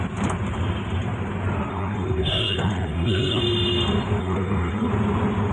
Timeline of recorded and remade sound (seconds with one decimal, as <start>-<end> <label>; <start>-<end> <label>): 0.0-1.7 recorded; 1.7-3.4 remade; 3.4-4.2 recorded; 4.2-4.9 remade; 4.9-5.5 recorded